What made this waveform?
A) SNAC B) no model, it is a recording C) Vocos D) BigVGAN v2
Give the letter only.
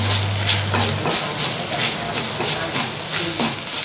B